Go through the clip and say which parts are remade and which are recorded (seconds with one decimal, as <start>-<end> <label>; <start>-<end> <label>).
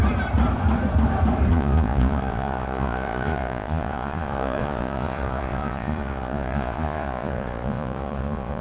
0.0-1.5 recorded; 1.5-8.6 remade